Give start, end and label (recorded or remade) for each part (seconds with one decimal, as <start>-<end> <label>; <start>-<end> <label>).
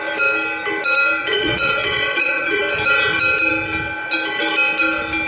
0.0-1.2 recorded; 1.2-2.6 remade; 2.6-5.3 recorded